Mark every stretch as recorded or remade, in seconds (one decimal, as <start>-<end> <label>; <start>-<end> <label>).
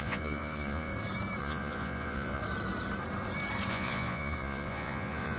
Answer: 0.0-0.9 remade; 0.9-1.4 recorded; 1.4-2.4 remade; 2.4-3.7 recorded; 3.7-5.4 remade